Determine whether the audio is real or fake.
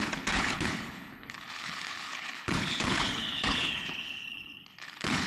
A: fake